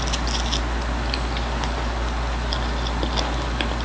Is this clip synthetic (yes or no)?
no